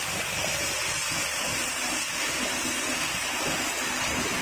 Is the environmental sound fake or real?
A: real